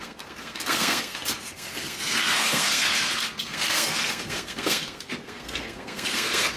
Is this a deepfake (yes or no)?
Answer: yes